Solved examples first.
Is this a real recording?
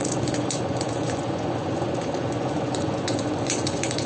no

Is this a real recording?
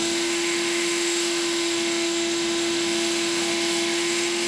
no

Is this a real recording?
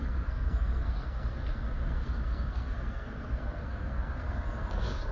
no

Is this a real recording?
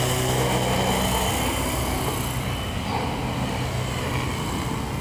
yes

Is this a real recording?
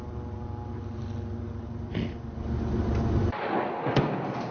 yes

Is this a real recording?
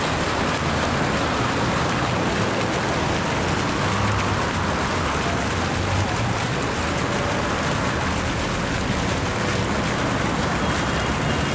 yes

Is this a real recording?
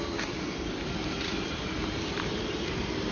no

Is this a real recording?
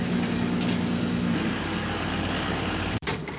no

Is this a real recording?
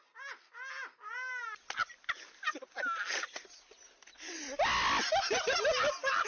yes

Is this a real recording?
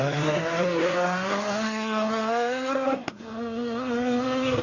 no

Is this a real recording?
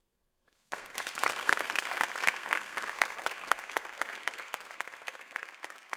no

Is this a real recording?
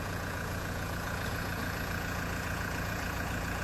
no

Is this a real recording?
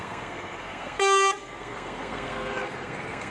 no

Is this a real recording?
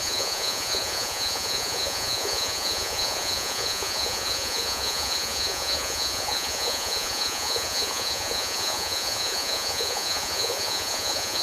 no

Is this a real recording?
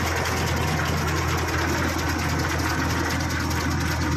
yes